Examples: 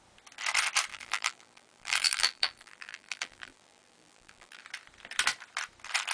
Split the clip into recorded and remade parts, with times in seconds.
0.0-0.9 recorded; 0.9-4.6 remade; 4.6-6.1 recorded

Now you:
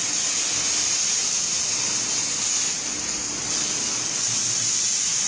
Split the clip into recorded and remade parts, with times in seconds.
0.0-5.3 recorded

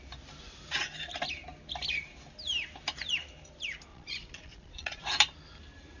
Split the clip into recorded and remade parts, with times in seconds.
0.0-3.9 recorded; 3.9-5.1 remade; 5.1-6.0 recorded

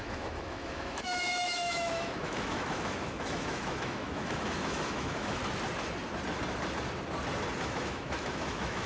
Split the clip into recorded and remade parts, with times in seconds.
0.0-5.4 remade; 5.4-7.6 recorded; 7.6-8.9 remade

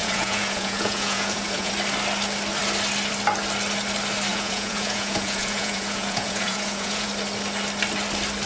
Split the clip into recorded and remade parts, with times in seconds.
0.0-1.7 remade; 1.7-4.3 recorded; 4.3-7.1 remade; 7.1-8.5 recorded

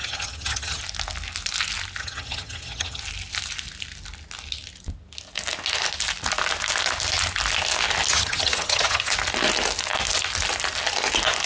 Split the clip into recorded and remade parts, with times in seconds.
0.0-0.8 remade; 0.8-2.0 recorded; 2.0-3.0 remade; 3.0-8.1 recorded; 8.1-9.1 remade; 9.1-11.5 recorded

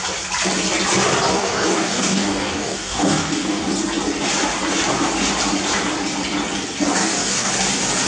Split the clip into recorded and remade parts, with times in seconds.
0.0-1.3 recorded; 1.3-3.7 remade; 3.7-7.0 recorded; 7.0-7.5 remade; 7.5-8.1 recorded